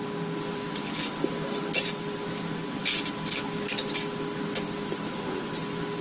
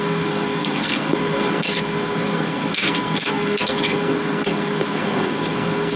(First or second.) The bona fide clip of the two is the first